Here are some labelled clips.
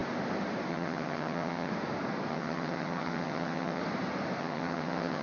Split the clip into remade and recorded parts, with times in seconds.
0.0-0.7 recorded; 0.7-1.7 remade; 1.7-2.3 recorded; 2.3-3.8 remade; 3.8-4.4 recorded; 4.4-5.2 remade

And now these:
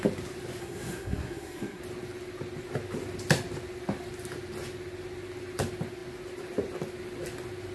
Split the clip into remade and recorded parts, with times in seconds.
0.0-0.6 recorded; 0.6-1.8 remade; 1.8-7.7 recorded